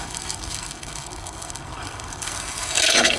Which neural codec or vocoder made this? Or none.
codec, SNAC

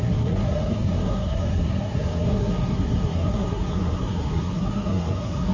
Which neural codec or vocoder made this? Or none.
codec, SNAC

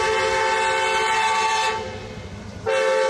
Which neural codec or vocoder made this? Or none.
none